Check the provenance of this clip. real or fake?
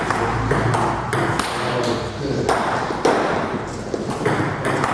real